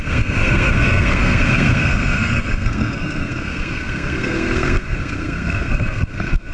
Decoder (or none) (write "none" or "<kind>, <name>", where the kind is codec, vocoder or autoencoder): codec, SNAC